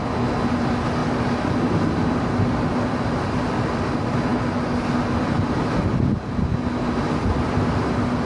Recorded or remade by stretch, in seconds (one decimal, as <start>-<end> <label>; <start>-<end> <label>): 0.0-8.3 recorded